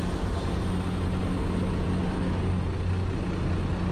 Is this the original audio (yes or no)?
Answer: yes